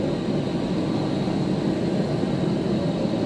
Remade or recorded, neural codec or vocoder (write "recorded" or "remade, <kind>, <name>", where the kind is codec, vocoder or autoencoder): recorded